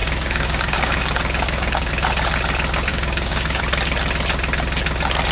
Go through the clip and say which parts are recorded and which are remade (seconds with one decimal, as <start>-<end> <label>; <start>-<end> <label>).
0.0-1.9 remade; 1.9-2.9 recorded; 2.9-3.6 remade; 3.6-5.3 recorded